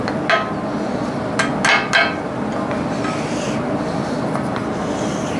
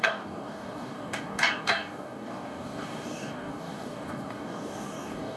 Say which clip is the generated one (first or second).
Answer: second